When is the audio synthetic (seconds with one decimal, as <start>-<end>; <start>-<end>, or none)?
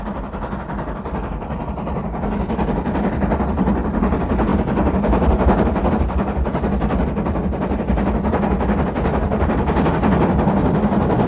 4.5-5.9